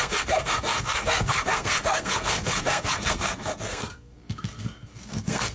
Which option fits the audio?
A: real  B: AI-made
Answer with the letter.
B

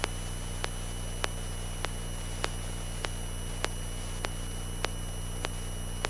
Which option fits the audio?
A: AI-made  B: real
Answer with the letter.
B